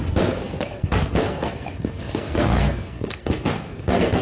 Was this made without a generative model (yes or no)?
no